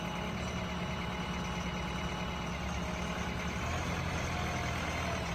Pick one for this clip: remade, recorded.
recorded